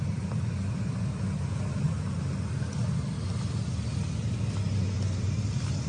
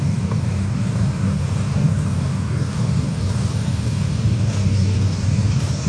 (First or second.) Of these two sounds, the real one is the first